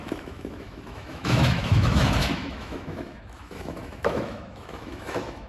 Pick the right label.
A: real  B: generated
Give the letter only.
B